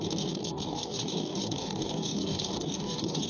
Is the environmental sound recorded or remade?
remade